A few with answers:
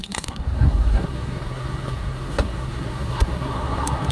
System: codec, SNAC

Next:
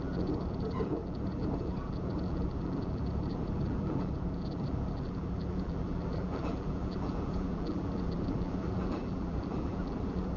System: vocoder, BigVGAN v2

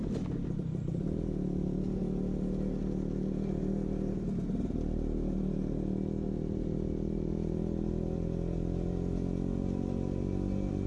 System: none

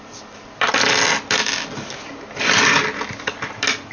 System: none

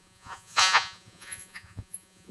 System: vocoder, Vocos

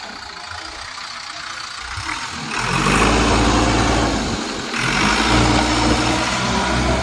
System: none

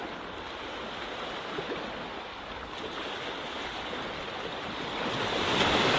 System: none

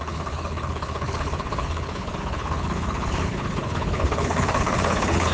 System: codec, HILCodec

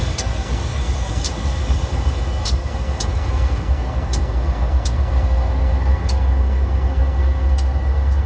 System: codec, SNAC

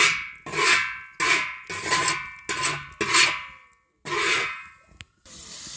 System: none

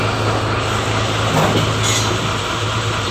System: none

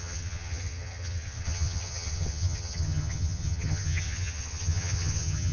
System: vocoder, HiFi-GAN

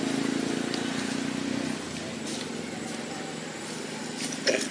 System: none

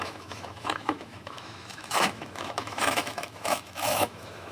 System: autoencoder, DAC-VAE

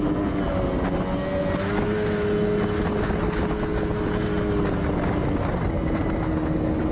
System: none